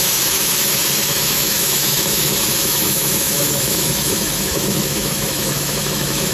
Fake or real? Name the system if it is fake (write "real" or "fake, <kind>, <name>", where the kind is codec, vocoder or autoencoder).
fake, autoencoder, DAC-VAE